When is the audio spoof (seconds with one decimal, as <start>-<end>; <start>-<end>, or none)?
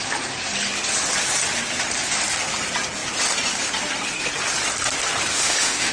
5.3-5.9